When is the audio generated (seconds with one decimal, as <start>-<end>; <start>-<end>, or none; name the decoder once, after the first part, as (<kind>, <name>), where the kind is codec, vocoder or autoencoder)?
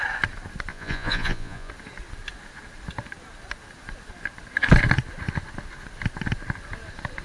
0.7-1.7 (vocoder, Vocos)